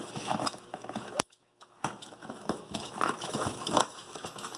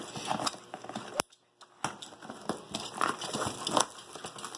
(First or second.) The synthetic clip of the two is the first